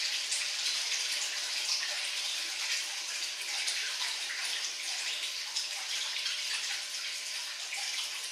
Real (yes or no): yes